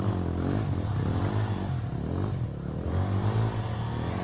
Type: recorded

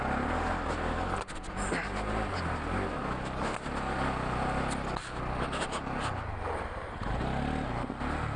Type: recorded